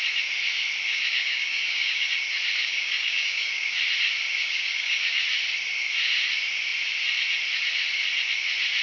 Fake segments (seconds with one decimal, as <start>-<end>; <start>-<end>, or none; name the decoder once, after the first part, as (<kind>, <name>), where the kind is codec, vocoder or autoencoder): 0.9-2.1 (codec, DAC); 2.6-3.8; 4.4-5.2